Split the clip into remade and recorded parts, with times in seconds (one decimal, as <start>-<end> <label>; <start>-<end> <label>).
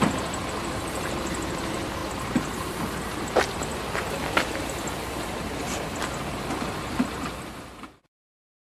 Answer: 0.0-2.0 remade; 2.0-3.2 recorded; 3.2-8.8 remade